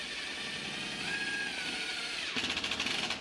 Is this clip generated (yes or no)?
no